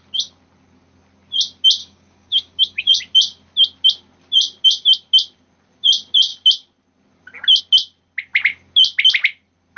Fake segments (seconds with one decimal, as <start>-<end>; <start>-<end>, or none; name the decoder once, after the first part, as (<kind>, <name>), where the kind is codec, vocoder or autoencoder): 1.8-3.0 (codec, DAC)